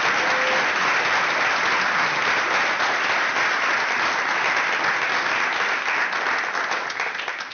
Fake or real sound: real